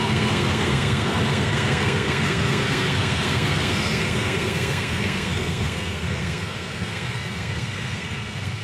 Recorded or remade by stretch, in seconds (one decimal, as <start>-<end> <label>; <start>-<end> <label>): 0.0-8.6 remade